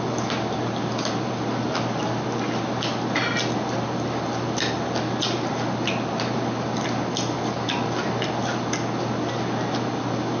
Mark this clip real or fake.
real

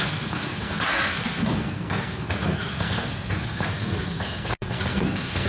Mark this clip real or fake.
fake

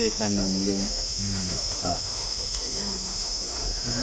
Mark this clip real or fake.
fake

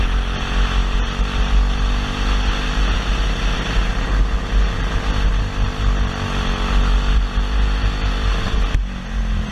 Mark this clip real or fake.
real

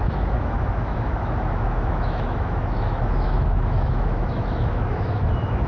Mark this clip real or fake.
fake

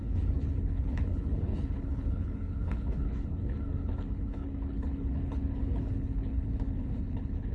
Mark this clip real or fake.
fake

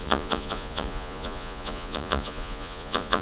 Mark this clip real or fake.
fake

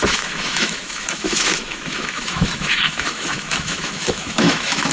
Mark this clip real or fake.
fake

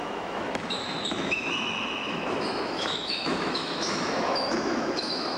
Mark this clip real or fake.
fake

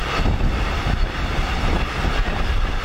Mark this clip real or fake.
real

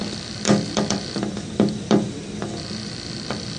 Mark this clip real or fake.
fake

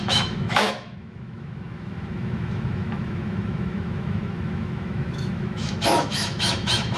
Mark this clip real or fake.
fake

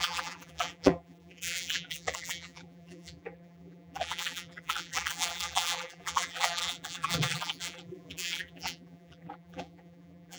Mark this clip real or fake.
fake